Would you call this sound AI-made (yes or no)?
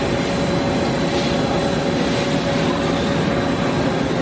no